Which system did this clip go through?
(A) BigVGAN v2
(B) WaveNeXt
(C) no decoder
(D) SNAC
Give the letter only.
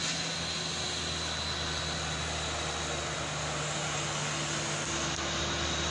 C